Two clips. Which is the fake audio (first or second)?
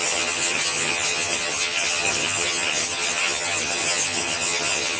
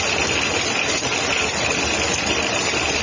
first